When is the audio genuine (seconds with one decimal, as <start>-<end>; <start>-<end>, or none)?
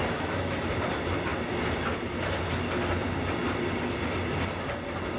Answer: 0.6-5.2